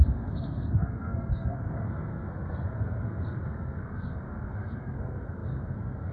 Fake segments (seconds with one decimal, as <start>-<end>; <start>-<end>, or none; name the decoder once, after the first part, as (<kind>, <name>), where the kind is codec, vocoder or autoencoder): 0.0-6.1 (codec, SNAC)